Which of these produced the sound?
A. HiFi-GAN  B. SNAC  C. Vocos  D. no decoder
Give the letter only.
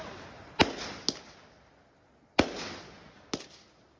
D